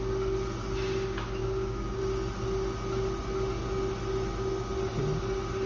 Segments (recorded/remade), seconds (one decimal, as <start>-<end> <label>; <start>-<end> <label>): 0.0-1.4 recorded; 1.4-2.0 remade; 2.0-5.7 recorded